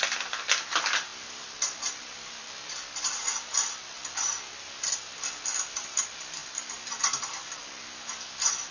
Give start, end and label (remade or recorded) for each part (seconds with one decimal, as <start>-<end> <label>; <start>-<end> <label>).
0.0-1.1 recorded; 1.1-6.0 remade; 6.0-6.4 recorded; 6.4-6.9 remade; 6.9-8.7 recorded